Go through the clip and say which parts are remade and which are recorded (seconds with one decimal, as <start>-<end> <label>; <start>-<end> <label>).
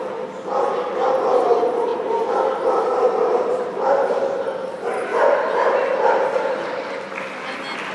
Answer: 0.0-1.9 recorded; 1.9-4.8 remade; 4.8-7.9 recorded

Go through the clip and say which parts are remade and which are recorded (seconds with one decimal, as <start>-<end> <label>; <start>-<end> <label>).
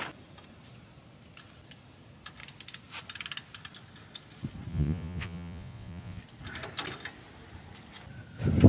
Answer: 0.0-4.7 recorded; 4.7-6.2 remade; 6.2-8.7 recorded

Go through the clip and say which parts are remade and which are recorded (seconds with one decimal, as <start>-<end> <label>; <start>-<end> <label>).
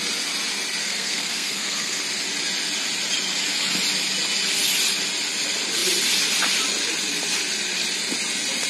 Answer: 0.0-0.8 recorded; 0.8-2.0 remade; 2.0-8.7 recorded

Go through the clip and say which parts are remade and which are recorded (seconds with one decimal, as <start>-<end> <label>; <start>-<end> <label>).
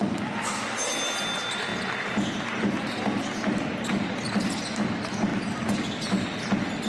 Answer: 0.0-5.3 recorded; 5.3-6.3 remade; 6.3-6.9 recorded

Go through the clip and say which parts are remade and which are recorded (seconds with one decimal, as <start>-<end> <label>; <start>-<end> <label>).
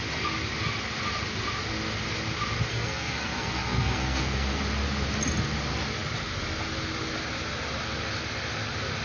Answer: 0.0-2.7 recorded; 2.7-4.6 remade; 4.6-9.0 recorded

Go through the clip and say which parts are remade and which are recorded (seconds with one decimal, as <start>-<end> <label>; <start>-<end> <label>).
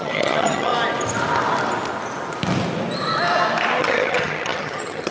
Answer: 0.0-0.7 remade; 0.7-3.8 recorded; 3.8-5.1 remade